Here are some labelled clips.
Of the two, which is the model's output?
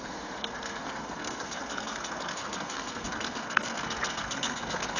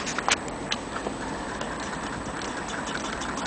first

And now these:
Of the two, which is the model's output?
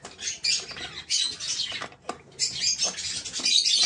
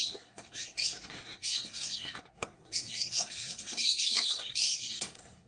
second